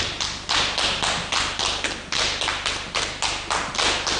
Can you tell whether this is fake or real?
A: real